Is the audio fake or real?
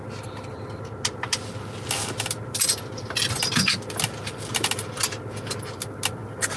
real